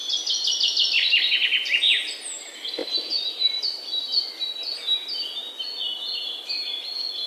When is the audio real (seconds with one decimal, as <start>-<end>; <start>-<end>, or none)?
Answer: 0.0-2.8; 4.0-7.3